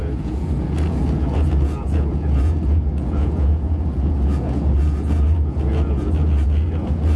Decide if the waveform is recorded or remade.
remade